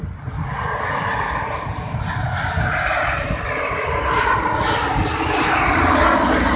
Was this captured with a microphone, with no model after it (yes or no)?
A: yes